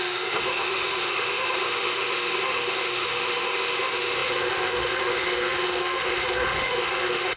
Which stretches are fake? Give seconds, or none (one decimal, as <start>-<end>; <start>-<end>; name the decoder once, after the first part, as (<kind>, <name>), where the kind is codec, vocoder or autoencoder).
0.0-7.4 (autoencoder, DAC-VAE)